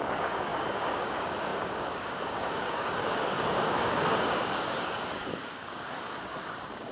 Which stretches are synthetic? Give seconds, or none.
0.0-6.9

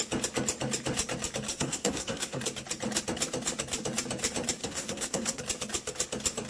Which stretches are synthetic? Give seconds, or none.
1.5-2.4; 4.6-5.4